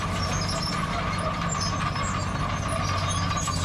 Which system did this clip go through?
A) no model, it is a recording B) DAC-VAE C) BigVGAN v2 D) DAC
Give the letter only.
A